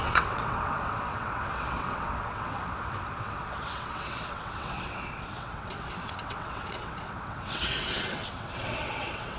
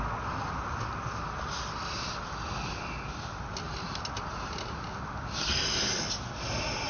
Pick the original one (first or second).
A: second